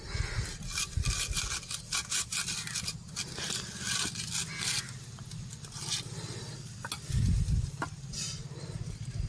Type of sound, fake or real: real